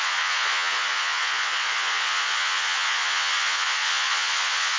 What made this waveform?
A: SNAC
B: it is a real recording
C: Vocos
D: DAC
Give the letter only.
C